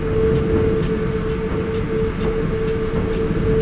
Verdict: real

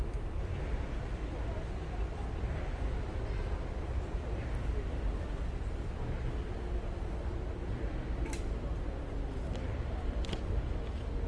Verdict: real